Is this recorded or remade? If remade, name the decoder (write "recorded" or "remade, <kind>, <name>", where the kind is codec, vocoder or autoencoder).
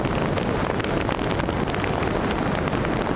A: recorded